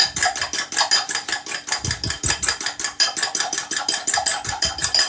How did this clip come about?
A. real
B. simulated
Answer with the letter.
A